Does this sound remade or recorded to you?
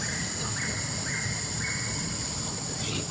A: recorded